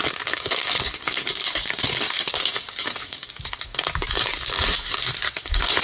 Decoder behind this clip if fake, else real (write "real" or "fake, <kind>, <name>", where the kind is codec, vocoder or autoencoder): fake, codec, DAC